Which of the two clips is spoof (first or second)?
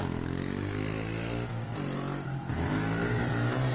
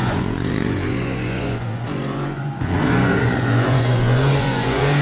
second